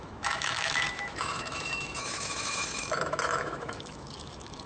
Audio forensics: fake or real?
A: fake